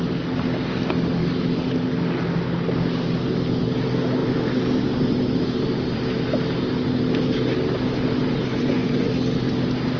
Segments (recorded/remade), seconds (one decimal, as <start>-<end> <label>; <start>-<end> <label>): 0.0-8.5 recorded; 8.5-9.1 remade; 9.1-10.0 recorded